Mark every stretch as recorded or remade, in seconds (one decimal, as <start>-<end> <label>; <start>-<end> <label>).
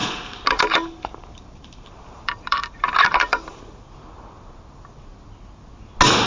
0.0-3.6 remade; 3.6-6.3 recorded